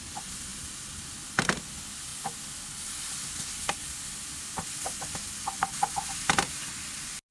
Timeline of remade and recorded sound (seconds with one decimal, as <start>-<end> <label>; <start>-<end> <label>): 0.0-7.3 recorded